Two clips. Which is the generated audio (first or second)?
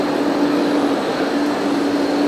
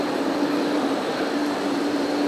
second